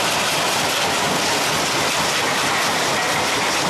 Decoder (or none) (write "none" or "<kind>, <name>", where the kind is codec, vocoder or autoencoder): none